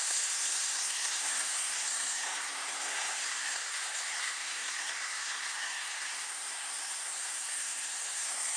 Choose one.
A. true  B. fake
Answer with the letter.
B